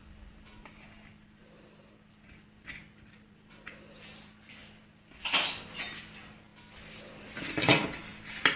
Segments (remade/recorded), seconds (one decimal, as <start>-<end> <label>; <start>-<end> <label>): 0.0-8.6 recorded